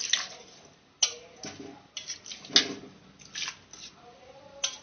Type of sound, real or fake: real